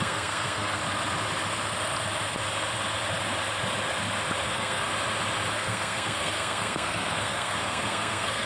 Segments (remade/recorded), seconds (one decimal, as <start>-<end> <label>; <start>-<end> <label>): 0.0-0.8 remade; 0.8-4.5 recorded; 4.5-4.9 remade; 4.9-5.5 recorded; 5.5-8.5 remade